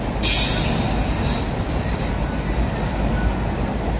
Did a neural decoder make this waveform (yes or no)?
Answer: no